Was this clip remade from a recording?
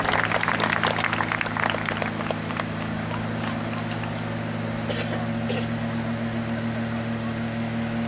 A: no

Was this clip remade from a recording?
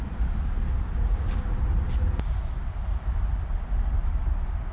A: no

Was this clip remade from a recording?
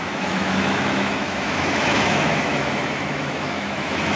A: yes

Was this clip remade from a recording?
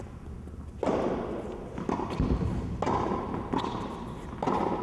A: no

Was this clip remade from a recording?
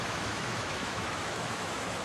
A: yes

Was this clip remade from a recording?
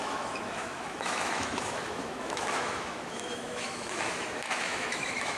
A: yes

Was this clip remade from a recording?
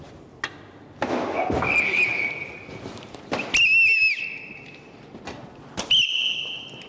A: no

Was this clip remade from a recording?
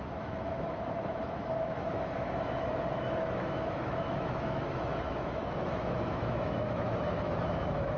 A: yes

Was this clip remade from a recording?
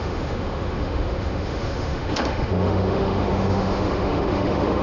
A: yes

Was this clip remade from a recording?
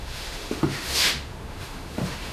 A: yes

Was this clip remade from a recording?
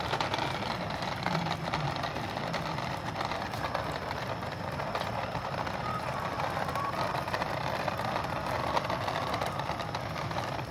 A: no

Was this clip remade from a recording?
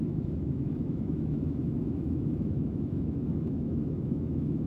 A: yes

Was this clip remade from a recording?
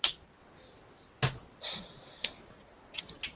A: no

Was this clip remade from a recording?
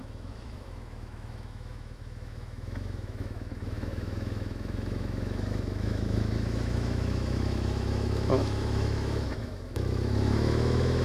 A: yes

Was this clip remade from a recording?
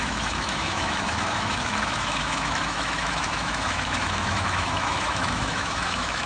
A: yes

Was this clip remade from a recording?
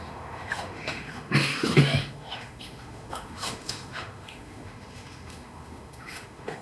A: yes